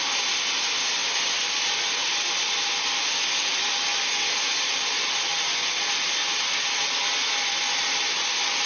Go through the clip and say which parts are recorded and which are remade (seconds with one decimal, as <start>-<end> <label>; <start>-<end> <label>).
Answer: 0.0-8.7 recorded